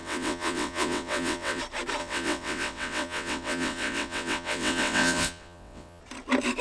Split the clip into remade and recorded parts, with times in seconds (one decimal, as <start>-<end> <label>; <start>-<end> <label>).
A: 0.0-1.6 remade; 1.6-2.0 recorded; 2.0-6.0 remade; 6.0-6.6 recorded